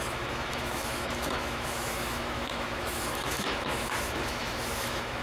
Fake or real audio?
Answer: fake